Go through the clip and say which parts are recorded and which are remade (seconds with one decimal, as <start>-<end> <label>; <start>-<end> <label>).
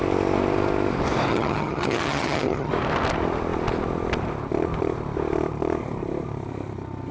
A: 0.0-1.3 recorded; 1.3-2.7 remade; 2.7-7.1 recorded